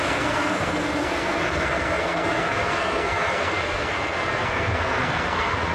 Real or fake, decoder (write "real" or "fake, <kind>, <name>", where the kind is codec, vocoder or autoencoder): fake, codec, SNAC